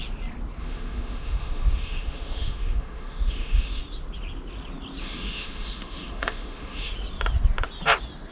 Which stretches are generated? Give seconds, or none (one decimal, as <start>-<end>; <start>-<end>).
0.6-3.8; 5.0-6.9